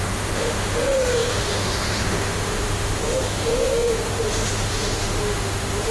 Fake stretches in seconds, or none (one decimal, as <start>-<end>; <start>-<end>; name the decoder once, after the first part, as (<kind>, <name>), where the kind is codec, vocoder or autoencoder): 0.0-5.9 (autoencoder, DAC-VAE)